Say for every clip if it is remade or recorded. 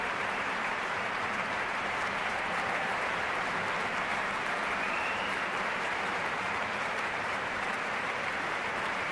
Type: remade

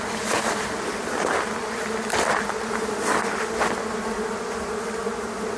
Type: remade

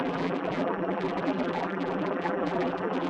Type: remade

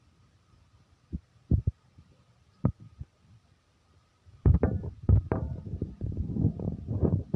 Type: remade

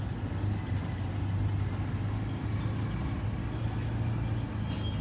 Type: recorded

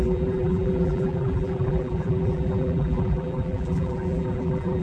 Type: remade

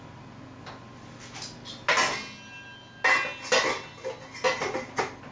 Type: recorded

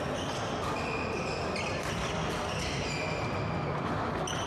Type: recorded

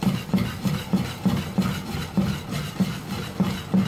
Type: recorded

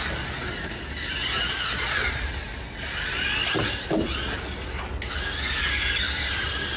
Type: recorded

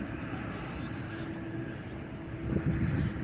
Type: recorded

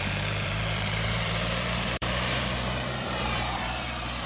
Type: remade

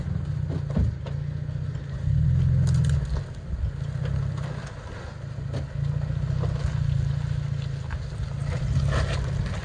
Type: recorded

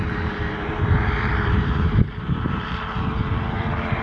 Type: remade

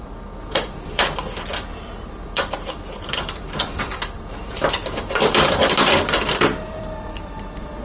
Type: remade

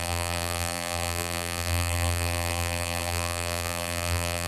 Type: remade